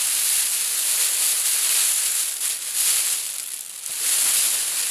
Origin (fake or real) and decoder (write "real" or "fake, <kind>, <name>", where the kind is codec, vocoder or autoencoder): real